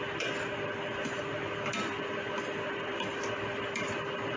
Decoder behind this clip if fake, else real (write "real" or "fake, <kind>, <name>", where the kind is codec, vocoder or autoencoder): real